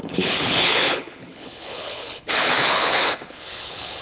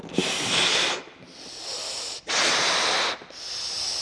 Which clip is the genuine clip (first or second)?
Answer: second